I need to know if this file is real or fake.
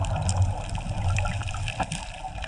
real